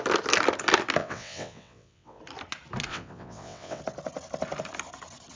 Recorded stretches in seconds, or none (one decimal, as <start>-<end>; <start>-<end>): 0.0-1.0; 2.2-2.9; 3.8-5.4